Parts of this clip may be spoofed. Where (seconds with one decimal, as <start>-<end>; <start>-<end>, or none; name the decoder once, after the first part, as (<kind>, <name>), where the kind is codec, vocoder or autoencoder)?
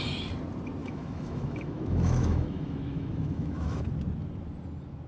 0.8-3.9 (autoencoder, DAC-VAE)